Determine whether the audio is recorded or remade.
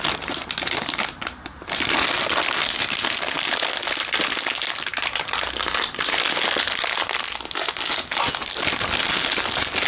recorded